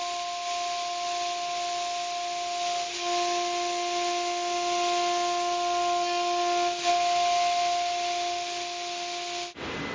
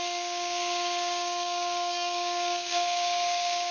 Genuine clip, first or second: first